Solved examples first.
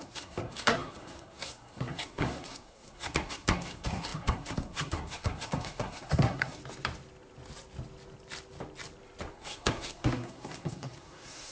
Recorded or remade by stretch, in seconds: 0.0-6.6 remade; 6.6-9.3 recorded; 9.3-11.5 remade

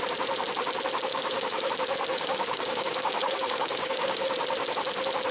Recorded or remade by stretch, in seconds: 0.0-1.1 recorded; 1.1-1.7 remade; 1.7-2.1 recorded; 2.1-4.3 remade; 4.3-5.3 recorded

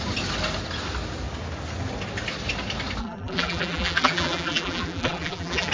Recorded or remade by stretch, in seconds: 0.0-3.0 recorded; 3.0-5.7 remade